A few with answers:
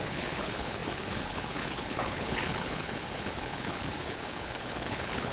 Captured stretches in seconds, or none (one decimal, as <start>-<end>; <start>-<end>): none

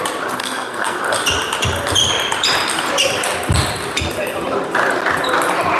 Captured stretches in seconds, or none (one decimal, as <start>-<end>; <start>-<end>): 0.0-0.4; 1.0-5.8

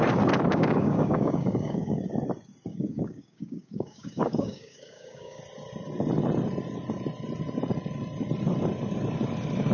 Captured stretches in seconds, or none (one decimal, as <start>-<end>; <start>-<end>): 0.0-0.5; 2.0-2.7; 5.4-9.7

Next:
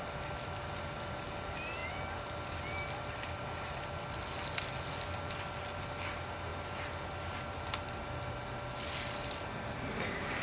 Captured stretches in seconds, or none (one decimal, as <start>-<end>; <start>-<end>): 0.0-10.4

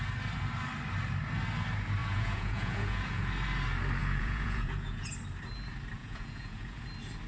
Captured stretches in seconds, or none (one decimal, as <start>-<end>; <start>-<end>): 0.0-2.0; 3.3-4.0; 5.1-6.0; 6.8-7.3

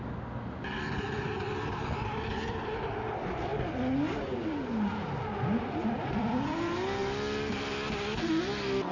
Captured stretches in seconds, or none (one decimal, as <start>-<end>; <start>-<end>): 0.0-8.9

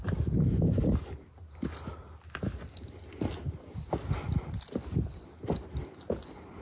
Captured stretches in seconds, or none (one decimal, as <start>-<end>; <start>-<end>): 0.0-6.6

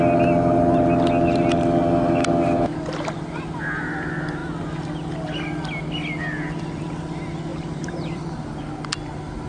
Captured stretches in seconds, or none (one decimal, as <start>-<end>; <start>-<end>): 0.0-7.5; 8.2-9.5